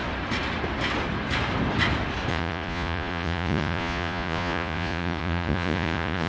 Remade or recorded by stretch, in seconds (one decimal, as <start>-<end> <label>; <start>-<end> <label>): 0.0-2.3 recorded; 2.3-6.3 remade